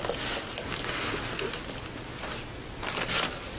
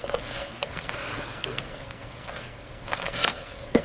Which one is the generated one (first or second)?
second